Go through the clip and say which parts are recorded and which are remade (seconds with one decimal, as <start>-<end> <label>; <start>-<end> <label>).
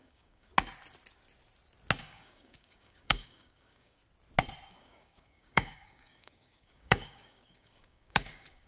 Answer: 0.0-0.5 remade; 0.5-2.0 recorded; 2.0-4.0 remade; 4.0-4.7 recorded; 4.7-8.7 remade